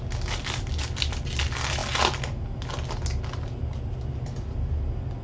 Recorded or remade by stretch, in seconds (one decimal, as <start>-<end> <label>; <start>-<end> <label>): 0.0-5.2 recorded